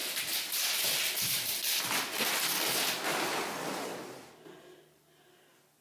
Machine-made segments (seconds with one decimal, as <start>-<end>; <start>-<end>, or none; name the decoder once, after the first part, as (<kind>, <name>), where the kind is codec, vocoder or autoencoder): none